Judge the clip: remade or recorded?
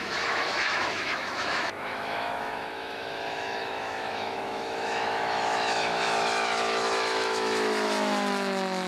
remade